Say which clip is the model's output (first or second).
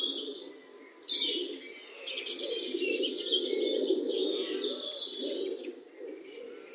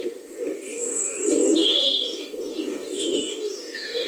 second